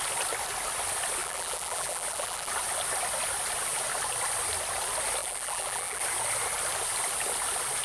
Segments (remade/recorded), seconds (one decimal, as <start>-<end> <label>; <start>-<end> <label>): 0.0-1.2 recorded; 1.2-2.5 remade; 2.5-5.2 recorded; 5.2-6.0 remade; 6.0-7.8 recorded